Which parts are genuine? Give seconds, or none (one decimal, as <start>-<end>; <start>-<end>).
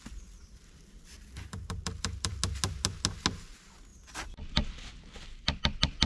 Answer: 0.0-0.4; 2.3-6.1